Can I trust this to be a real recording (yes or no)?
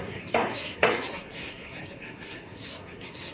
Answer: no